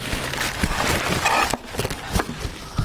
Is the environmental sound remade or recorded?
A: recorded